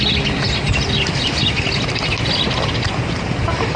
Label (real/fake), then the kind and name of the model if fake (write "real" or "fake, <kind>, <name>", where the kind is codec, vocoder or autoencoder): real